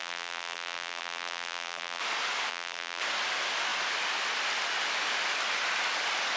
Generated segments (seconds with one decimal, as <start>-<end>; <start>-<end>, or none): 0.0-2.0; 2.5-3.0